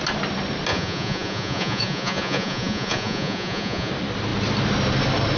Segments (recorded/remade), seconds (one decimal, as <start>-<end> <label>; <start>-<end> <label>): 0.0-0.7 recorded; 0.7-3.9 remade; 3.9-5.4 recorded